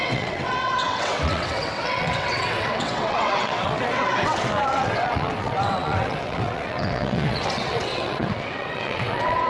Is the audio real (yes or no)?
no